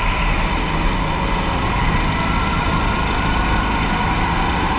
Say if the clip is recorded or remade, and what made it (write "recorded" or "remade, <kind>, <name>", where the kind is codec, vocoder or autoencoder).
recorded